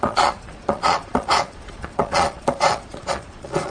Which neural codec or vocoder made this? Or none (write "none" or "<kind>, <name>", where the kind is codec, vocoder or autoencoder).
vocoder, Vocos